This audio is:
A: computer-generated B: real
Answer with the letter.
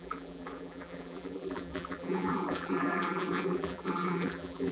A